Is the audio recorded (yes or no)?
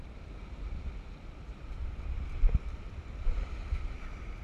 no